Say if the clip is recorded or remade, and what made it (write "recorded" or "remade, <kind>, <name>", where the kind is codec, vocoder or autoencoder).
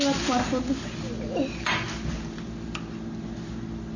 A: recorded